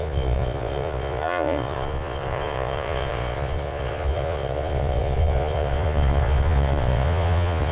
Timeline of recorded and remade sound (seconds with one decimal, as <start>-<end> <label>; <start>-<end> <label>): 0.0-7.7 remade